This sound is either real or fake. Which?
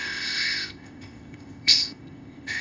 fake